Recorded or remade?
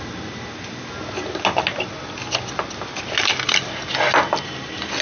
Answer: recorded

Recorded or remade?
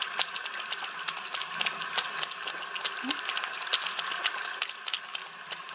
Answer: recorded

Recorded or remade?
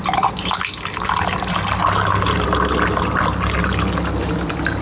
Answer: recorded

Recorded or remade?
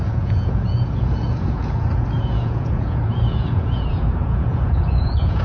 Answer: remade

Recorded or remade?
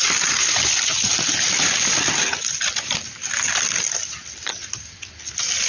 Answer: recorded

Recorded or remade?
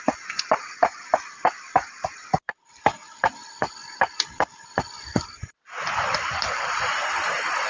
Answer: recorded